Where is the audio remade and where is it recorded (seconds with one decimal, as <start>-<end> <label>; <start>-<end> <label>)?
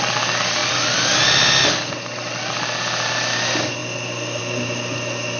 0.0-0.6 recorded; 0.6-1.2 remade; 1.2-5.4 recorded